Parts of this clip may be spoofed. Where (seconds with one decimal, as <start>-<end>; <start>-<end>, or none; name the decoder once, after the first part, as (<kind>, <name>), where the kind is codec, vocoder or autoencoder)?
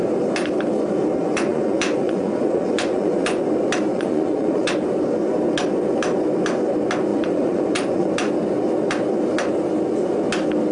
1.2-3.4 (vocoder, Vocos); 3.9-4.7; 7.1-8.1